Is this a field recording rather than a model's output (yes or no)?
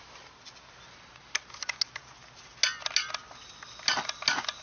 yes